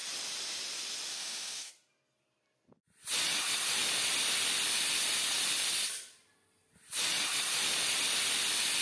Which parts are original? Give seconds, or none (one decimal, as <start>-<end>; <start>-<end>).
0.0-1.1; 1.7-8.8